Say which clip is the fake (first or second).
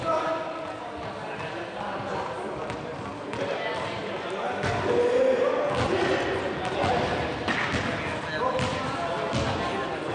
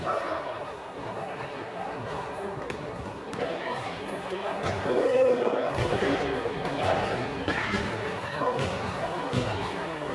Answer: second